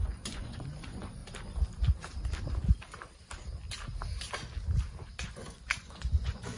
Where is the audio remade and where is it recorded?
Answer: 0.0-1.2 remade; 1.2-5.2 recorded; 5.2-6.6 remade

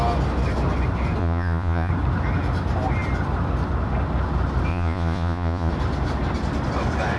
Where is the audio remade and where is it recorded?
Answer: 0.0-1.2 recorded; 1.2-1.9 remade; 1.9-4.7 recorded; 4.7-5.7 remade; 5.7-7.2 recorded